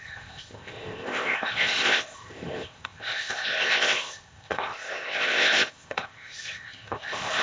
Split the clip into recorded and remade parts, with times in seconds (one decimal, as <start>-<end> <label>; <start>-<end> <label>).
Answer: 0.0-7.4 remade